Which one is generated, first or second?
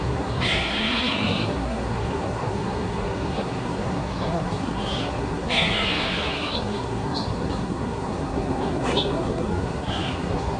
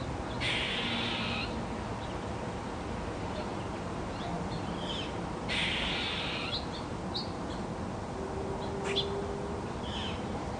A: first